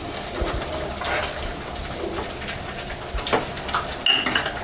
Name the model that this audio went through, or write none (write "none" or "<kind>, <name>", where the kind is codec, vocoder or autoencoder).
none